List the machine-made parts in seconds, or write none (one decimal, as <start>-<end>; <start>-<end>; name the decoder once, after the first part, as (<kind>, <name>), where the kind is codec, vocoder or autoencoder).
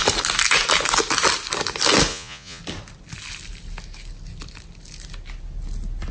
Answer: 2.1-2.6 (vocoder, Vocos)